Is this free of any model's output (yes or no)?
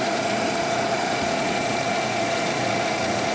no